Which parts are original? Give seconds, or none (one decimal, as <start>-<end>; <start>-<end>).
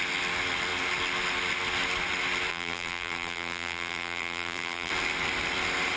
0.0-2.5; 4.9-6.0